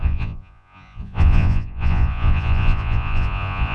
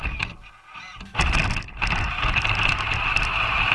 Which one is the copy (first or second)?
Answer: first